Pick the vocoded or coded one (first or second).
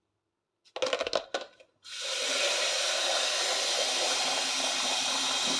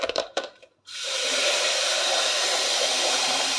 second